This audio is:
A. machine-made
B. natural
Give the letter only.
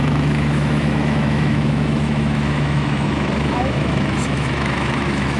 A